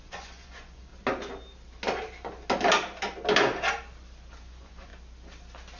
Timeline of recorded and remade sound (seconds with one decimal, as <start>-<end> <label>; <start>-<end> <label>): 0.0-0.9 remade; 0.9-4.4 recorded; 4.4-4.9 remade; 4.9-5.8 recorded